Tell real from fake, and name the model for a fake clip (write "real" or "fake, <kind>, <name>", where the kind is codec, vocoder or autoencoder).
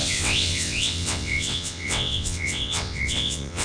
fake, vocoder, WaveNeXt